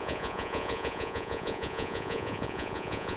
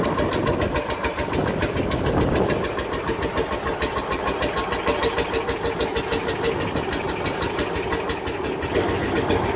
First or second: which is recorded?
second